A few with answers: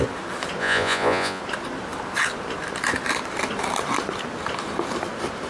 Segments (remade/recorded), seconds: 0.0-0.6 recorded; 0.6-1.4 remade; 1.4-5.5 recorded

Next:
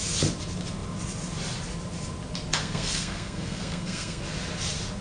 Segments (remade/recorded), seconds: 0.0-2.6 recorded; 2.6-4.2 remade; 4.2-5.0 recorded

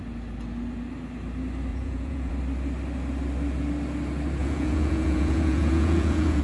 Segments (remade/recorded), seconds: 0.0-1.7 recorded; 1.7-2.3 remade; 2.3-4.4 recorded; 4.4-6.4 remade

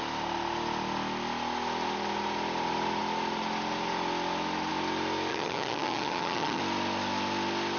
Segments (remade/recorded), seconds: 0.0-5.3 recorded; 5.3-6.6 remade; 6.6-7.8 recorded